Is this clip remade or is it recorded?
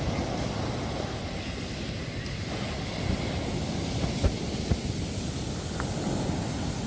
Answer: recorded